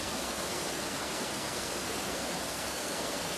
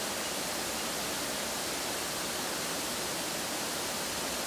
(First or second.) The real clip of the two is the second